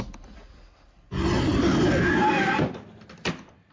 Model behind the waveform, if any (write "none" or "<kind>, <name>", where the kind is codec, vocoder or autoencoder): none